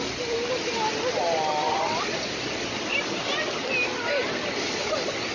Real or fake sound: real